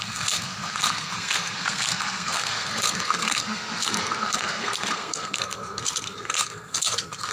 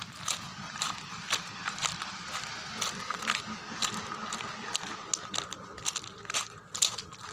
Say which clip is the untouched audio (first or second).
second